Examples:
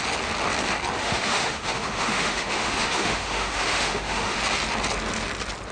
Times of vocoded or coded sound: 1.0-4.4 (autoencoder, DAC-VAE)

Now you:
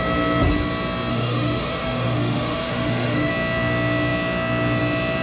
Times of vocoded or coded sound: 1.1-3.3 (autoencoder, DAC-VAE)